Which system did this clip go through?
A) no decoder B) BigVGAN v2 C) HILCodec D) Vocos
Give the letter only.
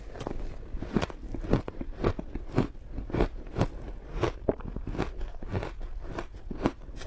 A